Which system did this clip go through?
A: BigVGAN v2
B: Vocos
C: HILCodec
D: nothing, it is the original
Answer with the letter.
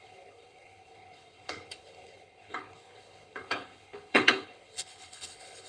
C